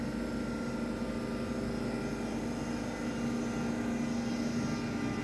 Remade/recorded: recorded